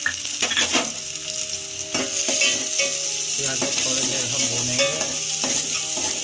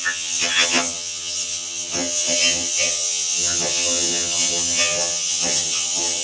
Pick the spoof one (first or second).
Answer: second